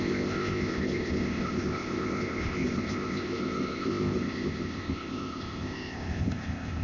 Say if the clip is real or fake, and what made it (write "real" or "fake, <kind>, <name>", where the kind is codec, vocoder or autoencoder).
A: fake, codec, ZipCodec